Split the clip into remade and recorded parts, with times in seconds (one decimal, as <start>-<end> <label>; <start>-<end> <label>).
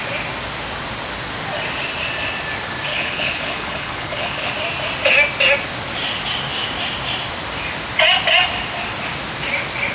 0.0-2.9 recorded; 2.9-4.5 remade; 4.5-9.9 recorded